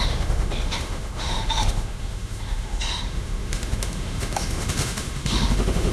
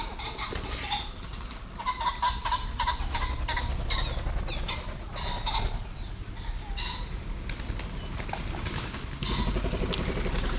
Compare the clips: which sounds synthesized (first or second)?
first